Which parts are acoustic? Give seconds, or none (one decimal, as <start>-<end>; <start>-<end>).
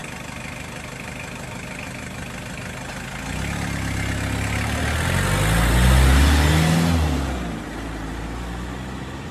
0.0-9.3